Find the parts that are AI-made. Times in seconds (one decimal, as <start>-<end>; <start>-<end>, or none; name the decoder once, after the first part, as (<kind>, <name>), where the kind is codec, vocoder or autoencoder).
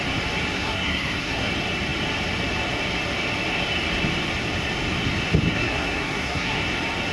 0.5-1.5 (codec, SNAC); 5.5-6.6